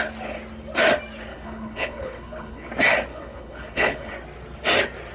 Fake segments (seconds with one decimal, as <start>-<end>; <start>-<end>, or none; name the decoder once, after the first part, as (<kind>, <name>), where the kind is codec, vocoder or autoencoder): 1.3-2.7 (codec, HILCodec); 3.1-4.1